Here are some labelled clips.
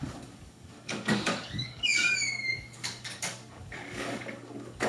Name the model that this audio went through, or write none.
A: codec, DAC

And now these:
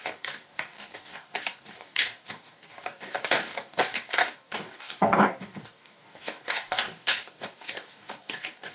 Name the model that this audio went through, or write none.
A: codec, DAC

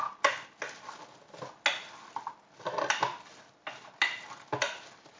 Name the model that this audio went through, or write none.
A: none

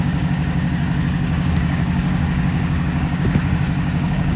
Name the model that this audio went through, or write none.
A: codec, DAC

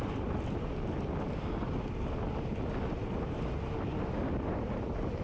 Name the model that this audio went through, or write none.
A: none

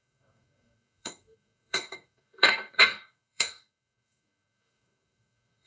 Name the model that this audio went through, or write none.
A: codec, DAC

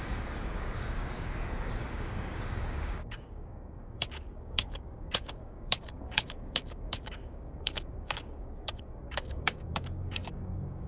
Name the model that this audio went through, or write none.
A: codec, DAC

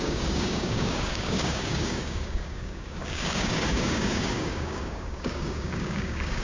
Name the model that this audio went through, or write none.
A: codec, DAC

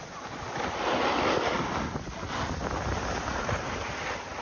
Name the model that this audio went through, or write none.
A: none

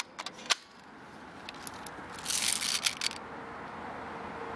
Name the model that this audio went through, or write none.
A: none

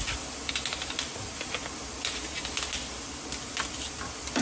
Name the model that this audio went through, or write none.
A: none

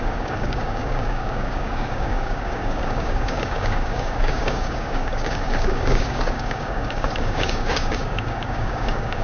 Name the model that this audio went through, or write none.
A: codec, DAC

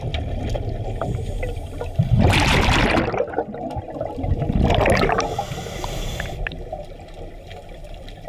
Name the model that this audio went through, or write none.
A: none